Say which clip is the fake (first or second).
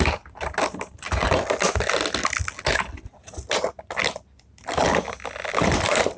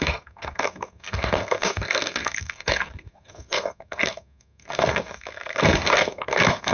second